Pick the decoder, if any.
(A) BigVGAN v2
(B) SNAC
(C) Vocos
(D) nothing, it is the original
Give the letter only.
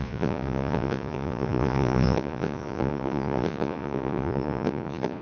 C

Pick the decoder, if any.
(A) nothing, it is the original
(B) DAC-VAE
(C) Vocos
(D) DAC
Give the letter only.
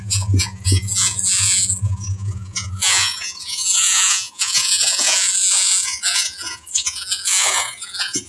C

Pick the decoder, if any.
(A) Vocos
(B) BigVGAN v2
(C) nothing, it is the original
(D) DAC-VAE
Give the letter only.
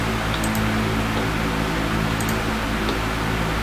C